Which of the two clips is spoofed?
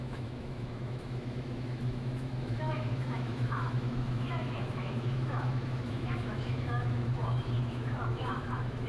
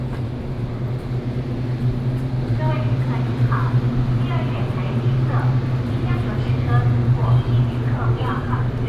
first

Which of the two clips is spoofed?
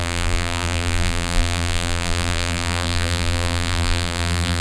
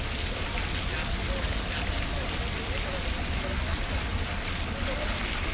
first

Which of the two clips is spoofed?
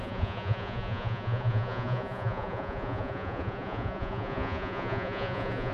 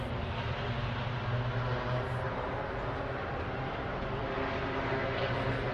first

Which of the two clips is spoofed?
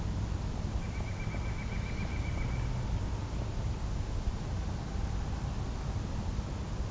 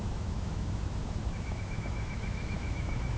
second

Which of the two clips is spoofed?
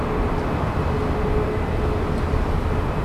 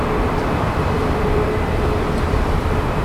second